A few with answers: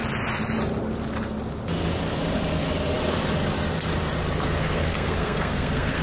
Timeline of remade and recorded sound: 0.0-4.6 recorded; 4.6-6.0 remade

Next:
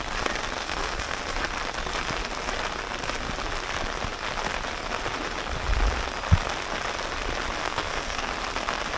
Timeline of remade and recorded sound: 0.0-0.6 recorded; 0.6-1.2 remade; 1.2-7.6 recorded; 7.6-8.3 remade; 8.3-9.0 recorded

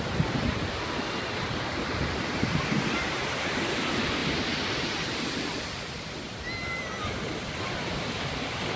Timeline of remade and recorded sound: 0.0-8.8 recorded

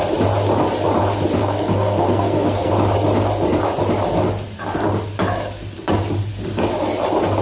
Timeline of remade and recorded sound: 0.0-1.4 recorded; 1.4-2.7 remade; 2.7-7.4 recorded

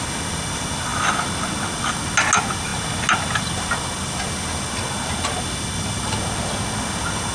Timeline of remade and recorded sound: 0.0-7.3 recorded

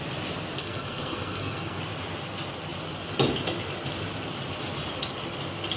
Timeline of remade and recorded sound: 0.0-0.6 recorded; 0.6-1.8 remade; 1.8-5.8 recorded

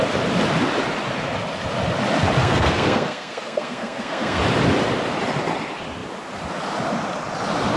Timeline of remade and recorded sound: 0.0-2.4 recorded; 2.4-4.4 remade; 4.4-7.8 recorded

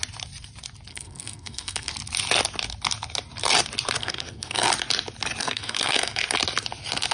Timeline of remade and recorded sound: 0.0-0.9 recorded; 0.9-1.9 remade; 1.9-4.0 recorded; 4.0-4.7 remade; 4.7-5.4 recorded; 5.4-6.2 remade; 6.2-7.1 recorded